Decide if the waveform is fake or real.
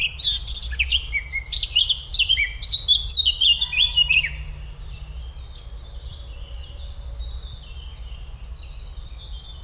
real